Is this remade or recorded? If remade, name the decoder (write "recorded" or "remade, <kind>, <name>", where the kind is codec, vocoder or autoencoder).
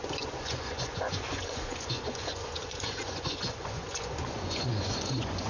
remade, vocoder, Vocos